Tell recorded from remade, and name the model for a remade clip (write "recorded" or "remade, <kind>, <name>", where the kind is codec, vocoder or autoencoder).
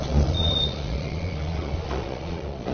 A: remade, vocoder, Vocos